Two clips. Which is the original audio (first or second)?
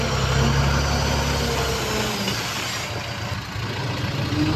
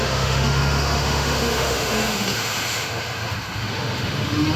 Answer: first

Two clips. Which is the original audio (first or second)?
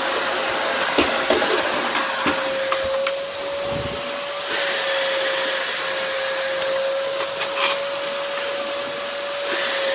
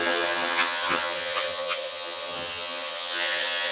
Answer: first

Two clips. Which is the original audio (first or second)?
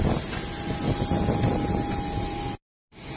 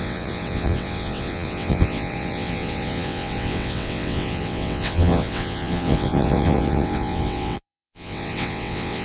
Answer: first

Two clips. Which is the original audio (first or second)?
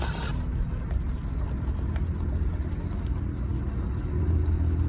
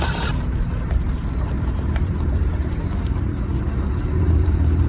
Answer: first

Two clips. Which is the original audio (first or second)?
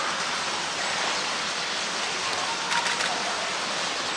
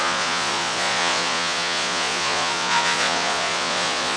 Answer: first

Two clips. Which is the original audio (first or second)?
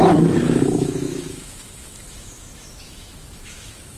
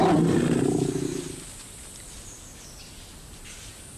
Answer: second